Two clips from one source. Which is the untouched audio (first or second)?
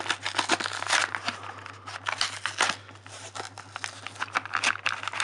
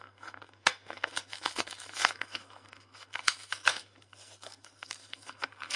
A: first